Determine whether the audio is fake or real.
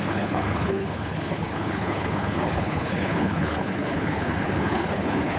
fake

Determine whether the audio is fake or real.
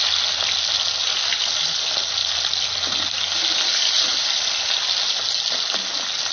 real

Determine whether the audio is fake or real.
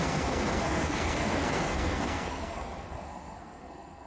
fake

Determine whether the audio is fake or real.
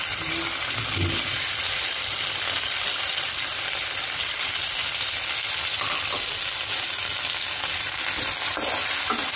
real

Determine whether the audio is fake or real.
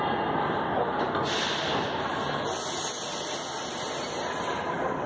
real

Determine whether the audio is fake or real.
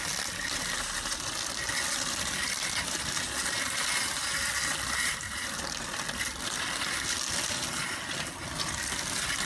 real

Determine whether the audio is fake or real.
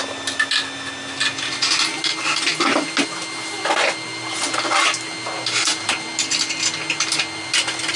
real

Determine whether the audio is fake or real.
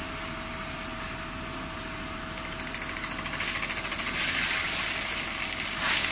real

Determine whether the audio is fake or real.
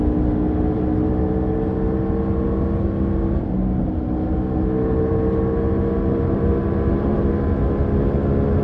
real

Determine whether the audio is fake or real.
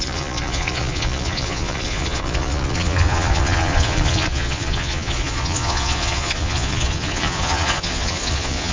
fake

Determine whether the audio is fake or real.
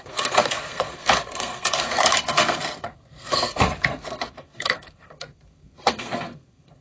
fake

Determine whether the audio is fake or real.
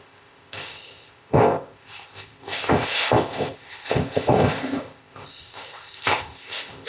fake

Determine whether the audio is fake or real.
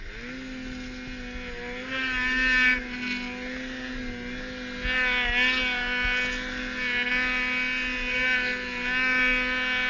real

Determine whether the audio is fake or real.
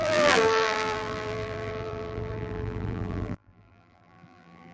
fake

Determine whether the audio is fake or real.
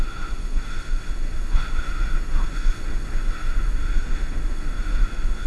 fake